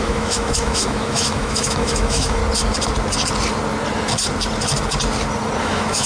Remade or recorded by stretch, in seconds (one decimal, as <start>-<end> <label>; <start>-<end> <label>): 0.0-2.4 remade; 2.4-5.6 recorded; 5.6-6.1 remade